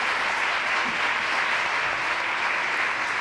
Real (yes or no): yes